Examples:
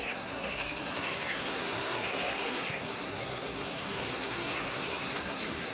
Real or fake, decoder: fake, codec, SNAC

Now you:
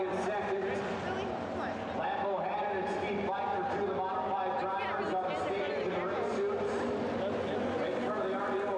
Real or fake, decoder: real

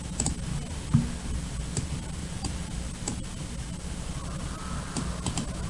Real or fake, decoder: real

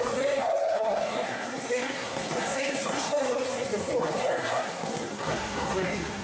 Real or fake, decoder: fake, codec, SNAC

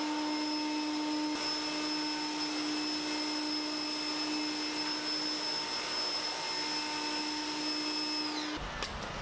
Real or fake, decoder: real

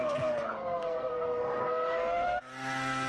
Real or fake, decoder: fake, codec, SNAC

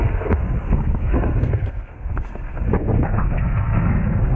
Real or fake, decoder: fake, codec, SNAC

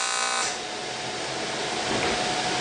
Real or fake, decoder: real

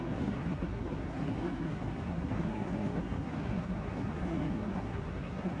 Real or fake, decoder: fake, codec, SNAC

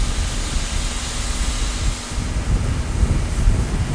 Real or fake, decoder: real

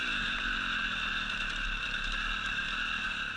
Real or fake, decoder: real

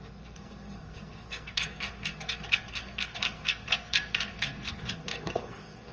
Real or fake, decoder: fake, codec, SNAC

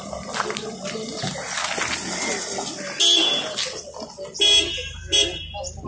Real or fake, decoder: real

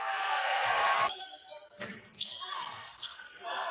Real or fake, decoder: fake, codec, SNAC